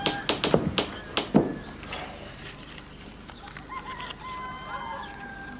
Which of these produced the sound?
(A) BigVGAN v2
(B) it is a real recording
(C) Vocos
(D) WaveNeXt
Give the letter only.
B